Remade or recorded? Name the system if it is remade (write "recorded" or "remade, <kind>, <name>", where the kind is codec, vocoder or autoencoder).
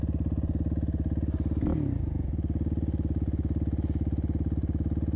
recorded